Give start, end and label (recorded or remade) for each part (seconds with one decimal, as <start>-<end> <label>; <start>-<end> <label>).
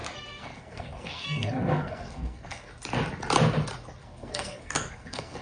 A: 0.0-2.7 remade; 2.7-4.0 recorded; 4.0-5.4 remade